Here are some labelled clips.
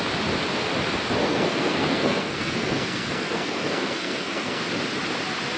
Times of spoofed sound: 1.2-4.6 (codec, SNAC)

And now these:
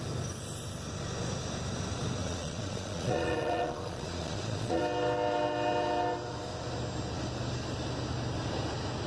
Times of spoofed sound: 2.2-4.8 (vocoder, Vocos)

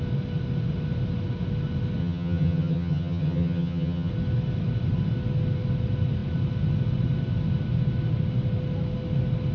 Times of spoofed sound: 2.0-4.1 (vocoder, HiFi-GAN)

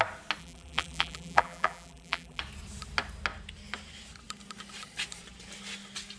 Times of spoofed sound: 0.4-2.4 (vocoder, BigVGAN v2)